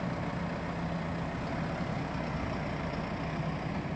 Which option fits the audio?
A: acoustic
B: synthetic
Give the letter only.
A